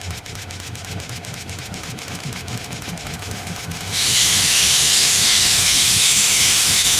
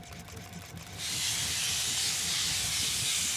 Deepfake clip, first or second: first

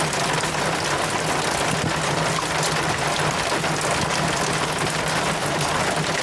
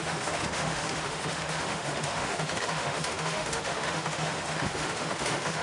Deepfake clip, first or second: second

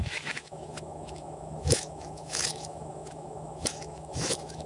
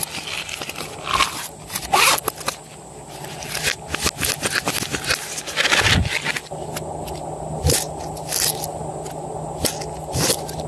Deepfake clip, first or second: first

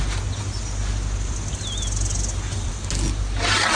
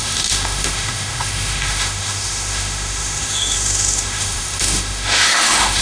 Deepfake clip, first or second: second